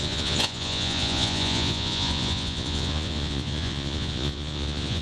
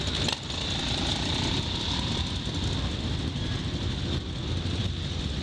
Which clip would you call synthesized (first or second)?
first